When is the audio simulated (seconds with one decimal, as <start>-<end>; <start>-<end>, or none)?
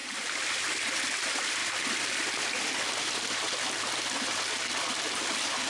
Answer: 0.0-0.7; 1.6-4.8